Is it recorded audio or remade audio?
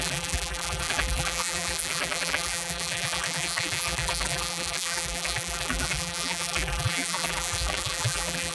remade